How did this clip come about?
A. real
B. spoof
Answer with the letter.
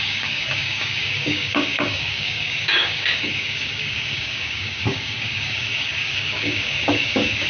B